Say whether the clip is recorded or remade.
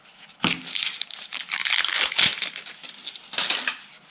recorded